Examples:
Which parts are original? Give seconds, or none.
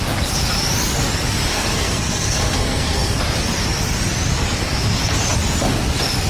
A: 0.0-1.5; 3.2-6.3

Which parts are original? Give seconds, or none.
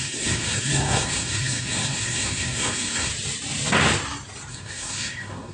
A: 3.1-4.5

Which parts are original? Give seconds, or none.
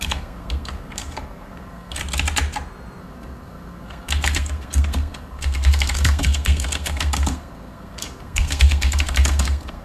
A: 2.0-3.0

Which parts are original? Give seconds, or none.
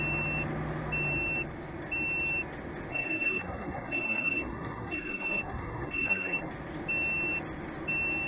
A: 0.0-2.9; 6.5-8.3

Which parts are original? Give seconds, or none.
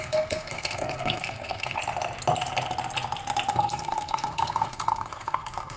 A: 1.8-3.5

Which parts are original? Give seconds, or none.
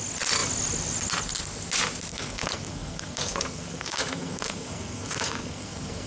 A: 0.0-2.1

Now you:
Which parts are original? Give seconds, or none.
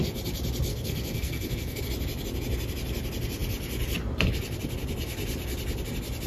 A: 0.0-0.7; 1.8-6.3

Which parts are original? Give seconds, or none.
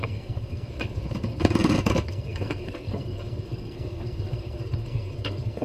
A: none